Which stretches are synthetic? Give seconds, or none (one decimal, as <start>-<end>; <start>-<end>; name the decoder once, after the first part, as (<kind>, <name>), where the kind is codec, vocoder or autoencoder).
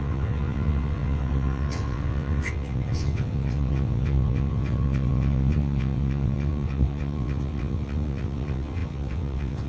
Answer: 0.0-9.7 (vocoder, WaveNeXt)